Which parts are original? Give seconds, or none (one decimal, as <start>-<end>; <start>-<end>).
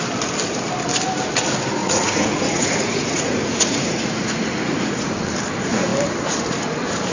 0.0-1.8; 5.1-7.1